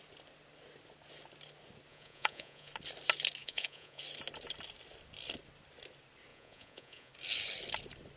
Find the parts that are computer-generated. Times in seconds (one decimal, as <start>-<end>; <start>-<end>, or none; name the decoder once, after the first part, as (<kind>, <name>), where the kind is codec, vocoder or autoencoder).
1.9-2.7 (vocoder, Vocos); 3.4-4.0; 6.3-7.1